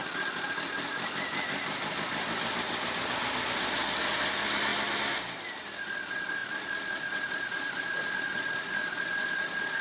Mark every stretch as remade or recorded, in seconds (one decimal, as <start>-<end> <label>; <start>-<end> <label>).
0.0-4.1 recorded; 4.1-4.7 remade; 4.7-5.4 recorded; 5.4-9.8 remade